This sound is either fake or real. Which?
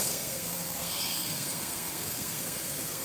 fake